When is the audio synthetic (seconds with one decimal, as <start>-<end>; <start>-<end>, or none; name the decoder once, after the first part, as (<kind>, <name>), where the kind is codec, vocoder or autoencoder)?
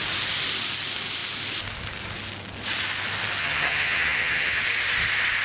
3.4-4.6 (vocoder, HiFi-GAN)